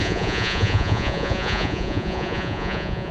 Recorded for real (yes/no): no